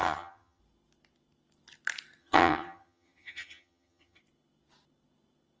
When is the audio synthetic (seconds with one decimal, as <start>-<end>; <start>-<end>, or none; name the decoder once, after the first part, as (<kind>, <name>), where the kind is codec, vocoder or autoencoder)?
0.0-0.6 (vocoder, HiFi-GAN); 2.2-4.2